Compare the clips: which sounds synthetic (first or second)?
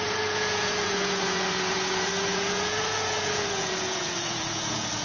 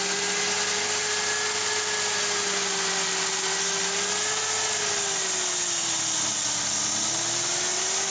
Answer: first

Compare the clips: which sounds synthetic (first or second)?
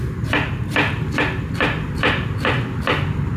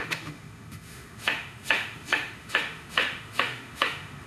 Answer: second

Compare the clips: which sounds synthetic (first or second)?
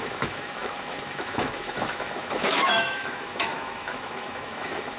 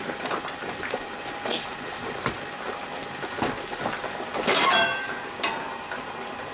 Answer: first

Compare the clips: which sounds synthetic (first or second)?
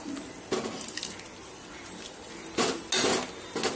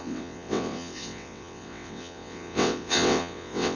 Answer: second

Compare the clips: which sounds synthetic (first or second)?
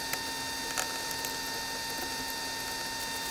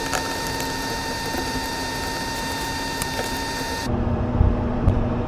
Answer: second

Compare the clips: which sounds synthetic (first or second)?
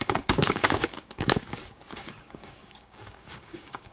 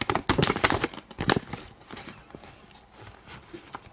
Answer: first